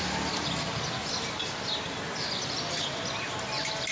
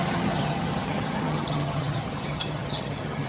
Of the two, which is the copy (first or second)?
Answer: second